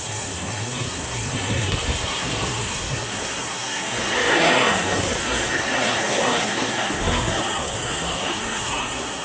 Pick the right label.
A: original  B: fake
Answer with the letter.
B